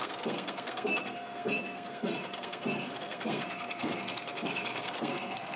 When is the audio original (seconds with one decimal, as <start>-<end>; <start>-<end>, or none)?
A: none